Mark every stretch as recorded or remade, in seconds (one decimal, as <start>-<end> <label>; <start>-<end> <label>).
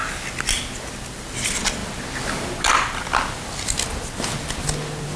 0.0-5.2 recorded